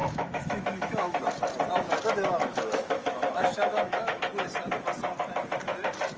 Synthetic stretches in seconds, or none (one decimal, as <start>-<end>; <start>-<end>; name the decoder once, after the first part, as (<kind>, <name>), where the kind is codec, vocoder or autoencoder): 0.0-1.2 (autoencoder, DAC-VAE); 2.4-4.2